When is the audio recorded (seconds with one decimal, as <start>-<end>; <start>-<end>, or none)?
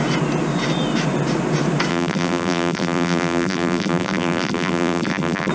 0.0-1.9